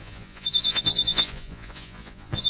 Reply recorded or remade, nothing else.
remade